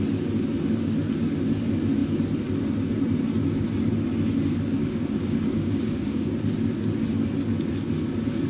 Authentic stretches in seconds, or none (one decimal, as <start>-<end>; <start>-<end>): 0.0-4.8; 6.3-8.5